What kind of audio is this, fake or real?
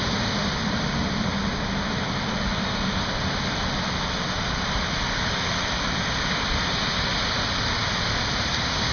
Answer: real